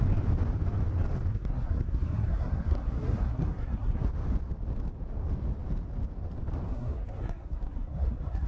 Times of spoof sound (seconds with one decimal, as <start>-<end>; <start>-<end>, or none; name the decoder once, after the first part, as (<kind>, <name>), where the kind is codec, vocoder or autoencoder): 1.3-4.0 (codec, SNAC); 6.7-8.5